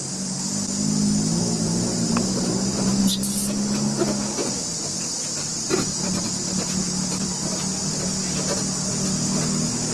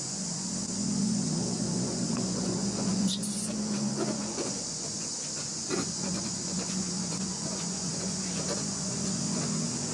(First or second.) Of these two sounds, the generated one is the second